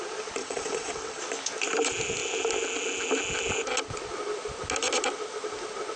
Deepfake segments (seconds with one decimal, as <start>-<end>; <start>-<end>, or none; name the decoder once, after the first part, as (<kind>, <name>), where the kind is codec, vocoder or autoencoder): 0.4-1.2 (vocoder, WaveNeXt)